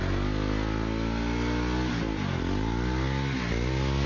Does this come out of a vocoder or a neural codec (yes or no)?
no